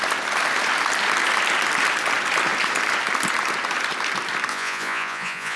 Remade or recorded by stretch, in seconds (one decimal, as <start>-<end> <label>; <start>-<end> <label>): 0.0-4.5 recorded; 4.5-5.6 remade